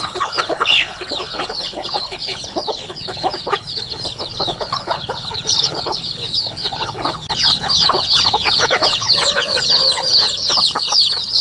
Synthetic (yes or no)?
yes